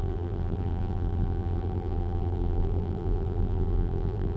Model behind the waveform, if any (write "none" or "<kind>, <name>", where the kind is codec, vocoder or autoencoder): vocoder, BigVGAN v2